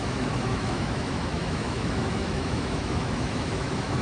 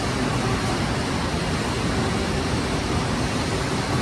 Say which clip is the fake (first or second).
first